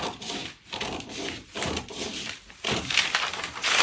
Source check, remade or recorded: remade